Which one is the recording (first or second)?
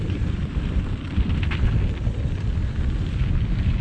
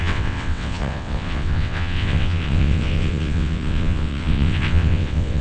first